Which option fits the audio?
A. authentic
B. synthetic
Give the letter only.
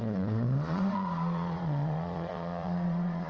B